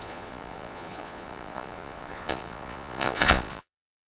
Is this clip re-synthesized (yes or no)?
yes